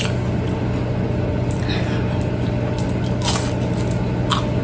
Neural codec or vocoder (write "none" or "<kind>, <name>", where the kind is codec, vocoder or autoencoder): none